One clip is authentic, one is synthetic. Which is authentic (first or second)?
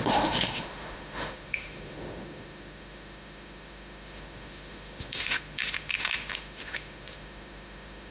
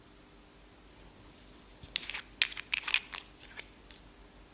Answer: second